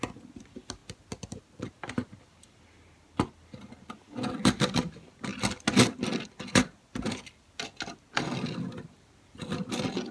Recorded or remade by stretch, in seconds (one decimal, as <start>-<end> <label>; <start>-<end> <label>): 0.0-10.1 recorded